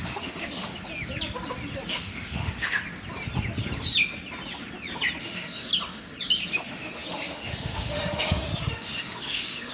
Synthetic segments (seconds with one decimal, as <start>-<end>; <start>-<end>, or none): 0.0-0.7; 1.9-2.8; 5.2-5.7; 6.5-9.7